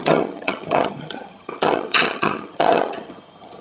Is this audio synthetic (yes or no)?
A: yes